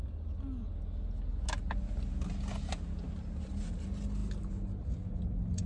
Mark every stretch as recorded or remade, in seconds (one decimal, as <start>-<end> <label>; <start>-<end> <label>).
0.0-5.7 recorded

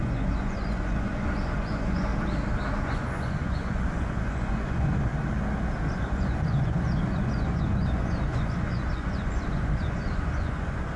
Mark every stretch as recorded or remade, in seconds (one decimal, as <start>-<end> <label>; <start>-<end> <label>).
0.0-2.1 remade; 2.1-2.8 recorded; 2.8-5.1 remade; 5.1-5.9 recorded; 5.9-11.0 remade

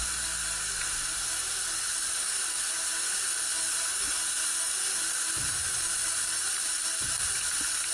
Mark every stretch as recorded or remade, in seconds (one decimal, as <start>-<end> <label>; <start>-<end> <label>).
0.0-3.5 recorded; 3.5-6.6 remade; 6.6-7.9 recorded

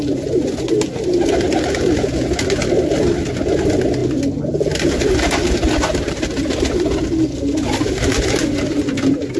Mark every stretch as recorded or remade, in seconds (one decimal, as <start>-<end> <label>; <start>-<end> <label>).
0.0-9.4 recorded

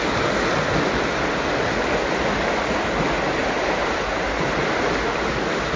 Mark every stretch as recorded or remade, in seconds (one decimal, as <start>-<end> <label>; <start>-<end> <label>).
0.0-3.4 recorded; 3.4-4.6 remade; 4.6-5.8 recorded

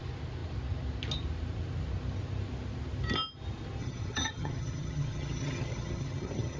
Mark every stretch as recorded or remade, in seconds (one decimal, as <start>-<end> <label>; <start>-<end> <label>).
0.0-3.8 recorded; 3.8-6.6 remade

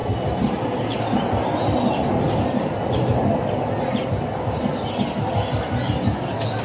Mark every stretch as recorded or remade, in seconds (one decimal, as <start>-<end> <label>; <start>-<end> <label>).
0.0-6.6 recorded